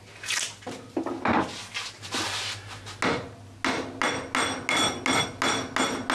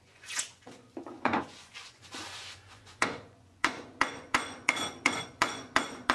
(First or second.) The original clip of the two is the first